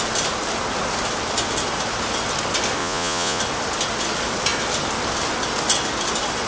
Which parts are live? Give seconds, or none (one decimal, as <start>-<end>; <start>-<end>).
0.0-2.8; 3.4-6.5